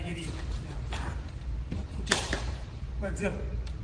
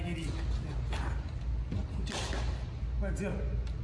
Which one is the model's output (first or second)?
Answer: first